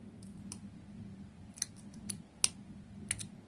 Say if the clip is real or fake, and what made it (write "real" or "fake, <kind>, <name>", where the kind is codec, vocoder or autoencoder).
real